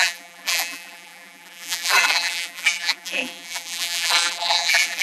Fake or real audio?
fake